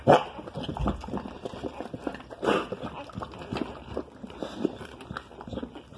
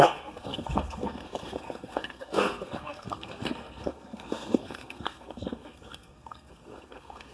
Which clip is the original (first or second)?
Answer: first